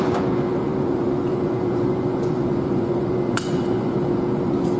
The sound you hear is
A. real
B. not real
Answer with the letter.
B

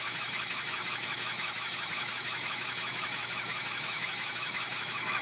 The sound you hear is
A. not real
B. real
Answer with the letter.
A